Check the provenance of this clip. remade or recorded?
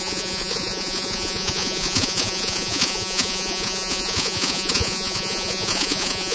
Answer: remade